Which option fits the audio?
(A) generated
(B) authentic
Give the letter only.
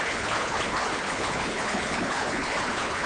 A